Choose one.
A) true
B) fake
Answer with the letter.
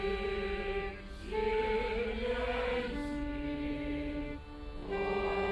A